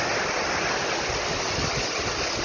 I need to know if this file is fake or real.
real